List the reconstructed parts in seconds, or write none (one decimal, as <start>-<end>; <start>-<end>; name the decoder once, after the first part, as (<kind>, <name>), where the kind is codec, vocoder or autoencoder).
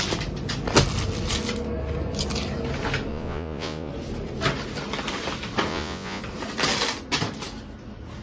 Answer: 3.1-3.9 (vocoder, Vocos); 5.7-6.2